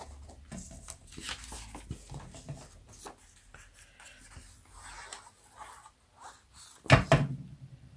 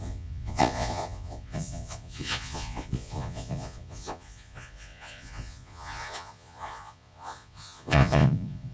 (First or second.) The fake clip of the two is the second